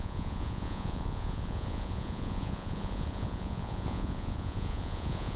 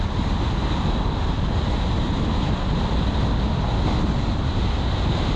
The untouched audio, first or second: second